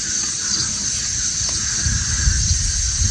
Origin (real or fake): real